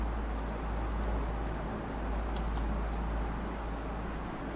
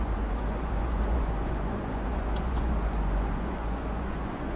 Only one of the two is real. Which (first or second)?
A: first